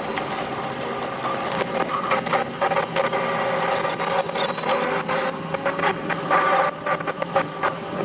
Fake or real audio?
real